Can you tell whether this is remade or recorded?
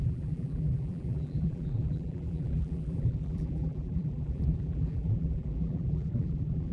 remade